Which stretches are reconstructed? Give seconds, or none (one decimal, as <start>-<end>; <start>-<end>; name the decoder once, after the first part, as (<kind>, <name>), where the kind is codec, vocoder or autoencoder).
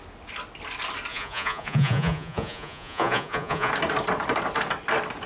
1.1-3.7 (vocoder, Vocos)